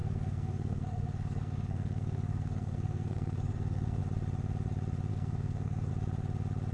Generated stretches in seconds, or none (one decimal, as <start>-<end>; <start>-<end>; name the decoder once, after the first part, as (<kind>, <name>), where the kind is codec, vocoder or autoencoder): 0.0-4.0 (codec, SNAC); 5.1-5.9